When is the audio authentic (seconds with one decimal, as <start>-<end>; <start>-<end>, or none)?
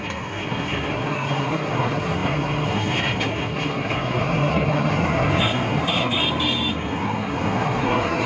6.2-6.7